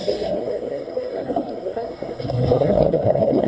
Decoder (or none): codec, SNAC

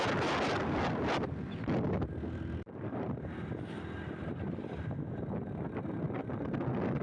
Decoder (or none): none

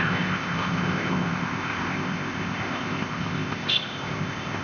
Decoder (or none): codec, ZipCodec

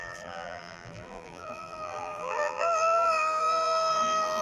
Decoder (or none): vocoder, BigVGAN v2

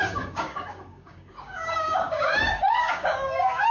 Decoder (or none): codec, DAC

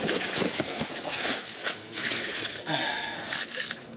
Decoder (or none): codec, SNAC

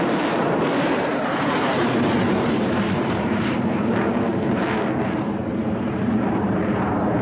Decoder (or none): vocoder, BigVGAN v2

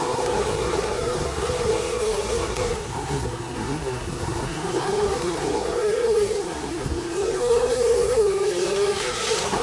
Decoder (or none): codec, SNAC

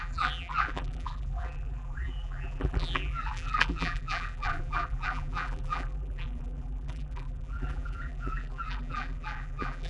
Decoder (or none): vocoder, BigVGAN v2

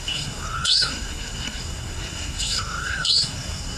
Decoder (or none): codec, SNAC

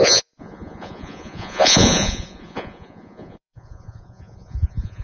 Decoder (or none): vocoder, Vocos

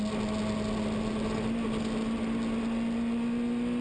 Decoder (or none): none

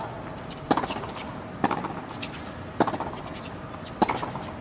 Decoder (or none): none